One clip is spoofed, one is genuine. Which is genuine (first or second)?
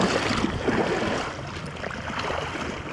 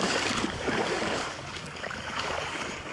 first